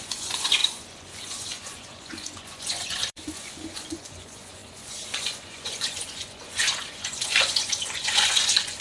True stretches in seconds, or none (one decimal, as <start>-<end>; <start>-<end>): none